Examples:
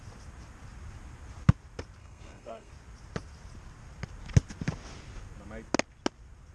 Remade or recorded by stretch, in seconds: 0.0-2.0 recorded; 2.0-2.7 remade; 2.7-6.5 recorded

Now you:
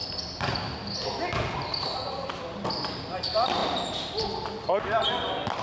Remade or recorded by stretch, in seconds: 0.0-5.6 recorded

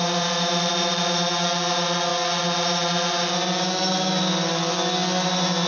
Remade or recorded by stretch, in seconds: 0.0-5.7 recorded